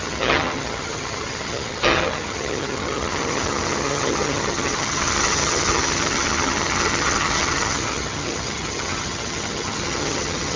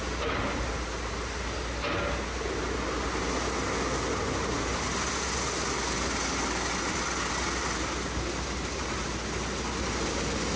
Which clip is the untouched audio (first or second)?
second